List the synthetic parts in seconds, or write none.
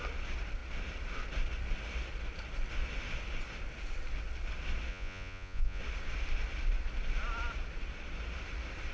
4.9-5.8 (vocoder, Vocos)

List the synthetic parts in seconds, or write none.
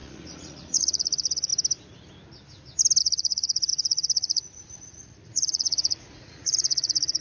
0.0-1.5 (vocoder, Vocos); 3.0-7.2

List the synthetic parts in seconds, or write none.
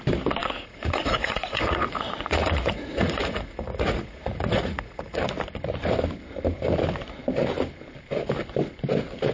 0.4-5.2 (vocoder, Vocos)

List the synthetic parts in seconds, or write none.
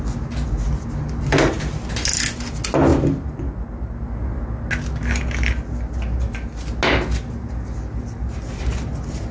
none